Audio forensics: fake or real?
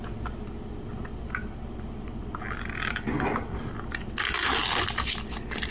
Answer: real